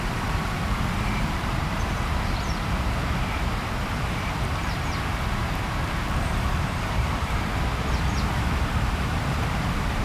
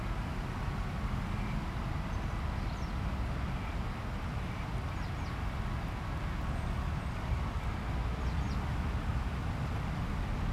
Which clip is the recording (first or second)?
second